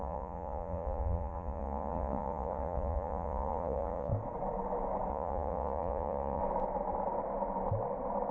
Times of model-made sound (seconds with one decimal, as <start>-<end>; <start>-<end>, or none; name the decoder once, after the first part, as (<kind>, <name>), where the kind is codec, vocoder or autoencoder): 0.0-4.1 (vocoder, Vocos); 5.1-6.4